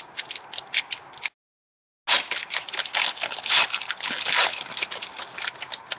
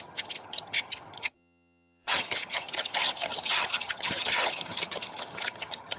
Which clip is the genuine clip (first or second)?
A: first